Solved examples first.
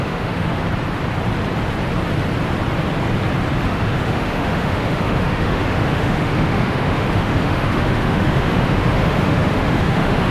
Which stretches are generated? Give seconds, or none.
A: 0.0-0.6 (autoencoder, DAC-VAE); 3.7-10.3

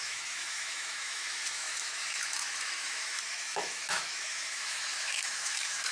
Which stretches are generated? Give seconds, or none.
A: 0.0-5.9 (autoencoder, DAC-VAE)

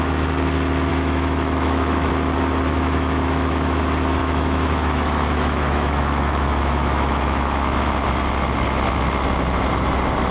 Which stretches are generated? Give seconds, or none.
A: 0.9-2.1 (autoencoder, DAC-VAE); 2.7-3.8; 4.2-7.9

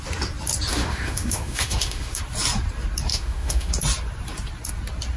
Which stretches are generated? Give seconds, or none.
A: 0.7-2.2 (autoencoder, DAC-VAE); 3.1-3.7

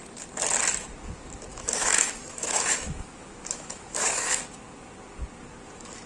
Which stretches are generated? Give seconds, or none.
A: 1.5-4.4 (autoencoder, DAC-VAE)